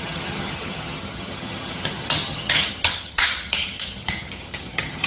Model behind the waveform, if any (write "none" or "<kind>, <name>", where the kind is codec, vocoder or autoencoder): vocoder, HiFi-GAN